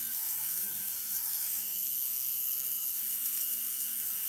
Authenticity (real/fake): fake